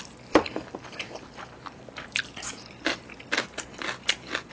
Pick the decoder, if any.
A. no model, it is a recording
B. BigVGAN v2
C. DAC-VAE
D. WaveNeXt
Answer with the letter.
A